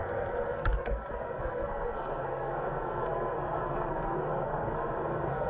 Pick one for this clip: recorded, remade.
remade